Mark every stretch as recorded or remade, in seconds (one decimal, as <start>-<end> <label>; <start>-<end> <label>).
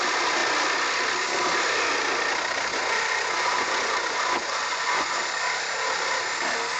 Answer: 0.0-2.7 recorded; 2.7-5.2 remade; 5.2-6.8 recorded